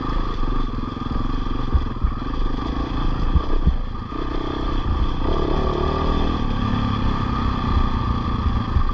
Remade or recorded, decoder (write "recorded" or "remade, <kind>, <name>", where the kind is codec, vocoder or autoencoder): recorded